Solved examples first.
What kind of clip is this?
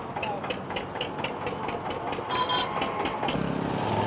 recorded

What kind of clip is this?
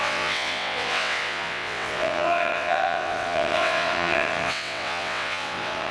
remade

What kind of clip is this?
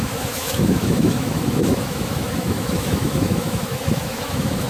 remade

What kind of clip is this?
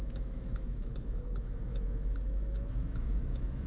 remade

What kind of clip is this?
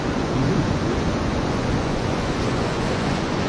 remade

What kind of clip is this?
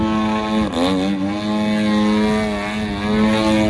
recorded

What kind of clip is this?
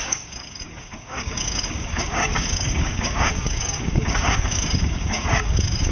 remade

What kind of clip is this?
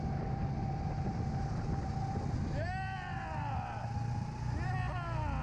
recorded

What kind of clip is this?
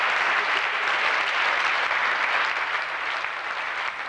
recorded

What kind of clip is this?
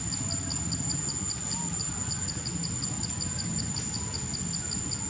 recorded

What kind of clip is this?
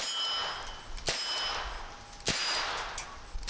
recorded